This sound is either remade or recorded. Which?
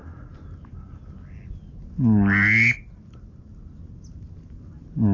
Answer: recorded